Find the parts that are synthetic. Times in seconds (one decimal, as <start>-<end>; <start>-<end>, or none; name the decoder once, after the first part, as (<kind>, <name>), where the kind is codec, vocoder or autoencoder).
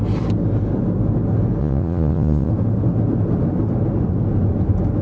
1.6-2.5 (vocoder, Vocos)